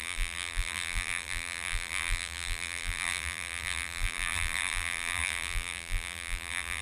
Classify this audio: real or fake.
fake